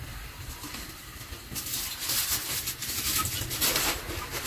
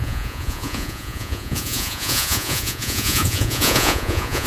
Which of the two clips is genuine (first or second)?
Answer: first